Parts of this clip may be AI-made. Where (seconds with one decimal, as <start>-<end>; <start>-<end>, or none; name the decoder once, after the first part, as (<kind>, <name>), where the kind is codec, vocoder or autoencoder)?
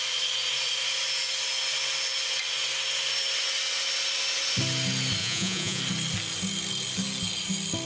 5.2-5.8 (vocoder, Vocos)